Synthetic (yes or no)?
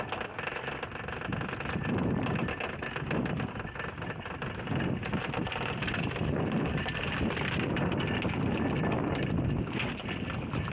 no